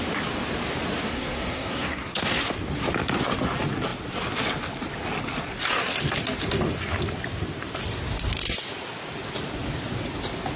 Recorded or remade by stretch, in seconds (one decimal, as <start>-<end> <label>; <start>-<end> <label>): 0.0-1.1 recorded; 1.1-2.4 remade; 2.4-10.6 recorded